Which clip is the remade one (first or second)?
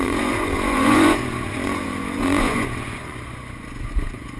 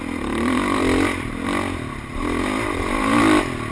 first